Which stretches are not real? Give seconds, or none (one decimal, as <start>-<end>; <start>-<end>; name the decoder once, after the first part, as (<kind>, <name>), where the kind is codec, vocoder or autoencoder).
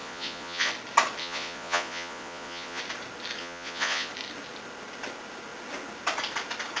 0.0-0.7 (vocoder, Vocos); 1.2-2.8; 3.4-4.1